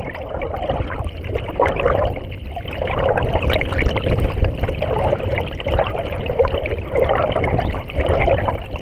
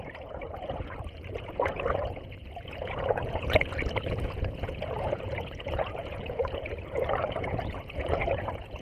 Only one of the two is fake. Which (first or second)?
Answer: second